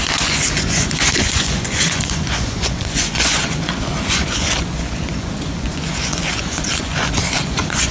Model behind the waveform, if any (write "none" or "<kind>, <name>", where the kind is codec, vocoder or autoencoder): vocoder, Vocos